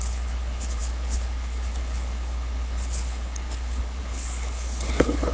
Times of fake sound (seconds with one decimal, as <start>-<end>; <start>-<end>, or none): 0.0-5.3